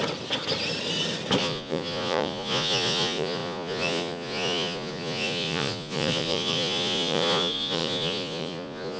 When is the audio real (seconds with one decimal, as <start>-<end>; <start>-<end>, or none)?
0.0-1.4